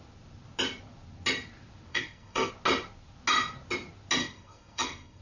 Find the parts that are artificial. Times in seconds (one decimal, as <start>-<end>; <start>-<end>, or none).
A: 1.9-2.5; 4.2-5.2